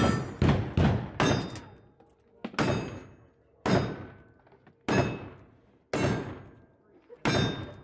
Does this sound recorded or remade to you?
recorded